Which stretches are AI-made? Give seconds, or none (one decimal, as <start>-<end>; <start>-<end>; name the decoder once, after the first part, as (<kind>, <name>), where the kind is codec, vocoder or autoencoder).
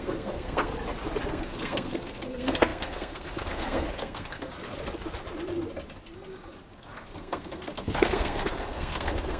0.0-0.7 (codec, SNAC); 1.3-4.5; 6.7-9.4